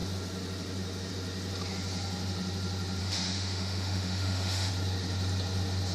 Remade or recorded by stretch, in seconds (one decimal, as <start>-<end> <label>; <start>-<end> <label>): 0.0-3.0 recorded; 3.0-4.7 remade; 4.7-5.9 recorded